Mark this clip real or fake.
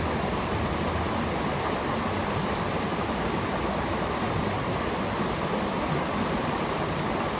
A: real